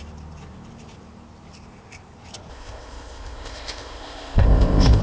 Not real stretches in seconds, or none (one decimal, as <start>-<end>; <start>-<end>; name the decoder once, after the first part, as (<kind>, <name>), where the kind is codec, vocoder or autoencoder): 2.5-5.0 (codec, ZipCodec)